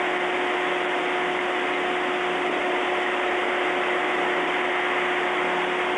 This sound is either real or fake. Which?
real